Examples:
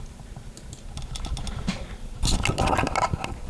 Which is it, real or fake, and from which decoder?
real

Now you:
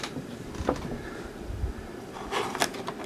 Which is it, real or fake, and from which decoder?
real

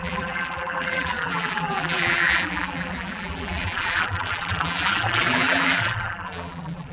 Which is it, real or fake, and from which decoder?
fake, vocoder, BigVGAN v2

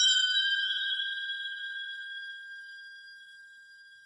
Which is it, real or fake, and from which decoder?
fake, codec, SNAC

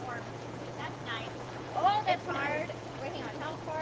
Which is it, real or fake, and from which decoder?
fake, vocoder, Vocos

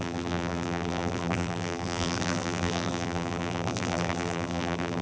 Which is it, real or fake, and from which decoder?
fake, vocoder, BigVGAN v2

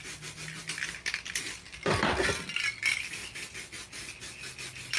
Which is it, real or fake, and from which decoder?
real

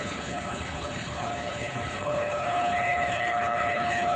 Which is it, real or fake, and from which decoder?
fake, codec, HILCodec